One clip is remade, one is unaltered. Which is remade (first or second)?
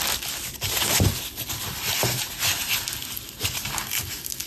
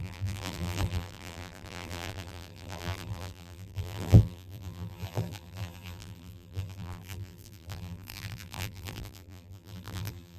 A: second